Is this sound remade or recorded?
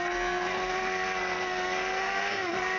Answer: remade